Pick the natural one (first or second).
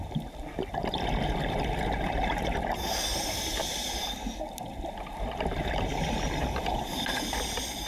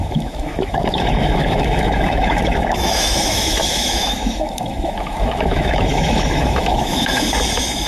first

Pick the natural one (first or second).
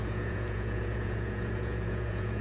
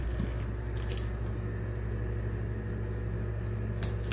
second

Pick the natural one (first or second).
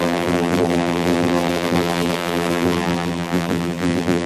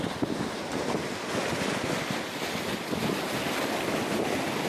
second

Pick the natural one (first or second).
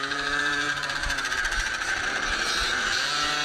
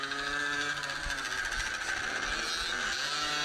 second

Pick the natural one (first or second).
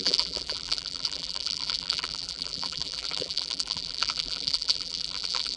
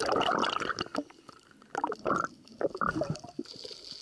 second